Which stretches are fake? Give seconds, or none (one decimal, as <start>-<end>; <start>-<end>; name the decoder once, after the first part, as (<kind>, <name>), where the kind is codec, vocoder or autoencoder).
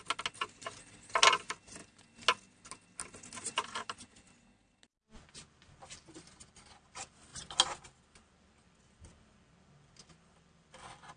none